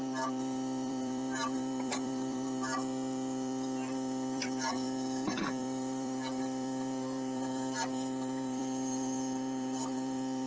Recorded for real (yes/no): no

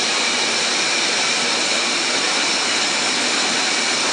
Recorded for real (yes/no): yes